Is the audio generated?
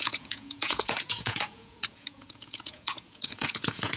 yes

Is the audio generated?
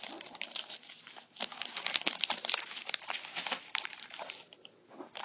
no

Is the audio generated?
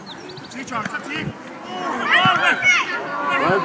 no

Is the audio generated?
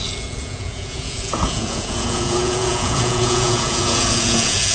yes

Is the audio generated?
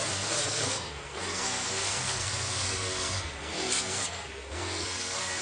yes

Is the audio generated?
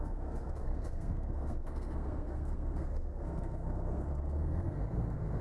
yes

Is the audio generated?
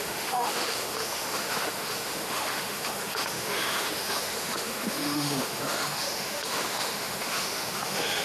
yes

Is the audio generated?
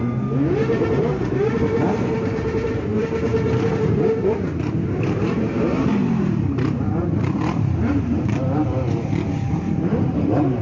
yes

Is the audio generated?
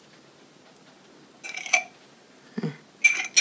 no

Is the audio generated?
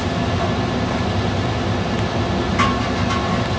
no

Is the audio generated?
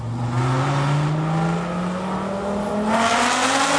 no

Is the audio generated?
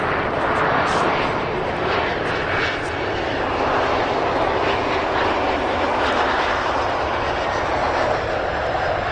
no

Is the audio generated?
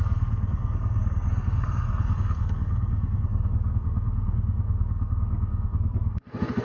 yes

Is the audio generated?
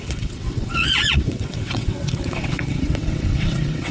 yes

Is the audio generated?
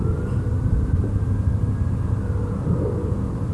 no